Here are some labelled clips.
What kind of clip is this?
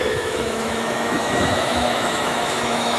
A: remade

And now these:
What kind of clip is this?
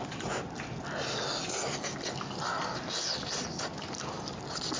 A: recorded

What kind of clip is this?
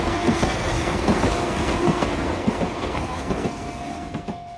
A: remade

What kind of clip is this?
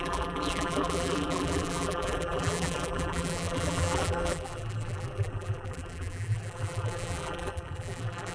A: remade